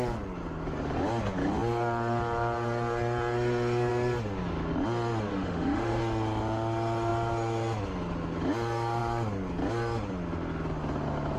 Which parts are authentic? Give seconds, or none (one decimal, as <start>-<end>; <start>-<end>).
0.0-5.3; 6.0-11.4